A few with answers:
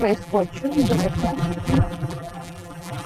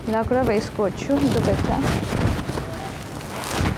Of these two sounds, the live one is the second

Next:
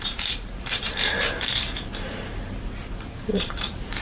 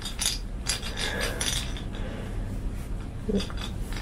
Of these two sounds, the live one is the second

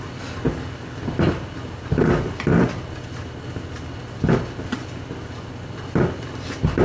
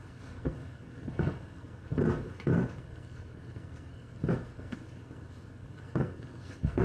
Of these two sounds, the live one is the first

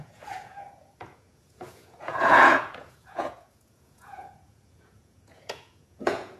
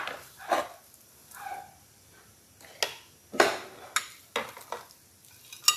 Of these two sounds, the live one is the second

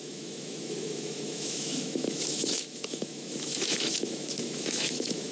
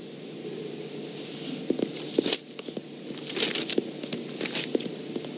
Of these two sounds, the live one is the second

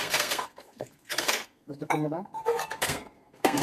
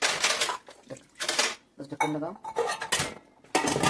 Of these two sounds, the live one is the second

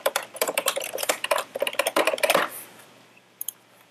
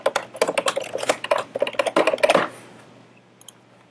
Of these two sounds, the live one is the second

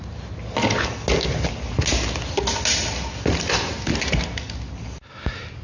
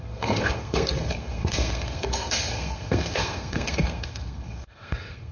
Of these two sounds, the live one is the first